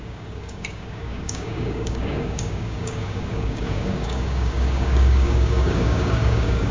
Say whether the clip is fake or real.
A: fake